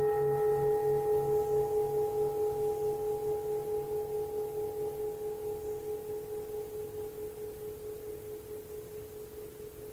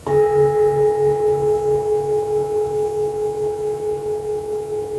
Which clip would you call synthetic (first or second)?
second